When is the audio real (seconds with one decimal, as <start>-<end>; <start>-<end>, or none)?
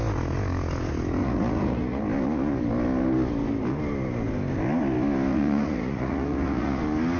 0.0-1.2; 2.0-5.3; 6.8-7.2